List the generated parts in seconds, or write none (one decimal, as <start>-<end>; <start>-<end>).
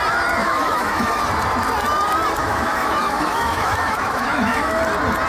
0.4-1.2; 2.4-4.8